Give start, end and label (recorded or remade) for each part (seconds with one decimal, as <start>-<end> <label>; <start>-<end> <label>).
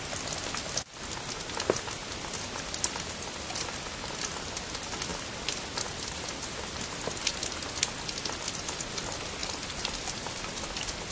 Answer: 0.0-9.4 recorded; 9.4-10.4 remade; 10.4-11.1 recorded